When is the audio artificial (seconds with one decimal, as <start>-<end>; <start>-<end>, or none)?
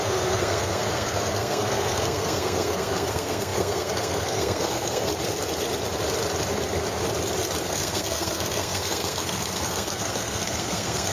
0.0-5.1; 7.6-11.1